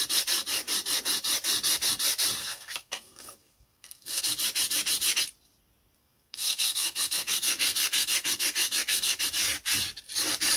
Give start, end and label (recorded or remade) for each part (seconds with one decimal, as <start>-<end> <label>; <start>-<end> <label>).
0.0-2.4 recorded; 2.4-4.2 remade; 4.2-6.0 recorded; 6.0-9.2 remade; 9.2-10.6 recorded